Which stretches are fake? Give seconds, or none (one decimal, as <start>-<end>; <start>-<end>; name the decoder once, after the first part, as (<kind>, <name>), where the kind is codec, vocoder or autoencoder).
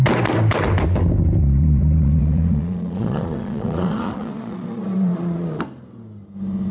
1.6-5.6 (vocoder, Vocos)